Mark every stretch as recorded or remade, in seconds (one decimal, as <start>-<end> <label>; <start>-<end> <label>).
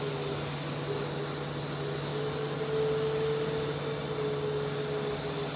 0.0-5.6 recorded